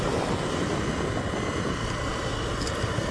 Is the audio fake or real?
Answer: real